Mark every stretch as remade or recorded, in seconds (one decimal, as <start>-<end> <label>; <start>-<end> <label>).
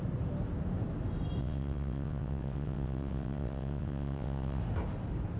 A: 0.0-1.4 recorded; 1.4-4.6 remade; 4.6-5.4 recorded